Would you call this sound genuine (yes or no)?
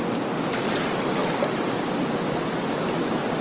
yes